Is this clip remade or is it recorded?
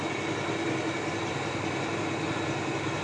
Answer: recorded